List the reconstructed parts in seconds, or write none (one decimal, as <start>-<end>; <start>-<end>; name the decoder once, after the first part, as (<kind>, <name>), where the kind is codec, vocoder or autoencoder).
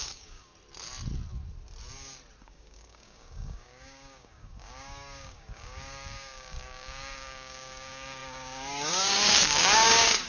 0.0-0.5 (codec, DAC); 2.4-10.3